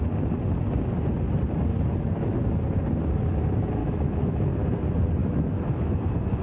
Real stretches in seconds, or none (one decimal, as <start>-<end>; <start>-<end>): 0.0-3.8; 4.5-5.2; 5.9-6.4